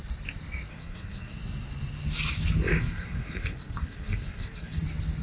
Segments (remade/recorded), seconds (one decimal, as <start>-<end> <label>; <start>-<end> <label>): 0.0-0.7 recorded; 0.7-1.3 remade; 1.3-2.7 recorded; 2.7-4.8 remade; 4.8-5.2 recorded